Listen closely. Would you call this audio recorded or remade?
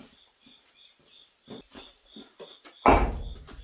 recorded